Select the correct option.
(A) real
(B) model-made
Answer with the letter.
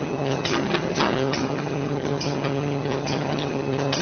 B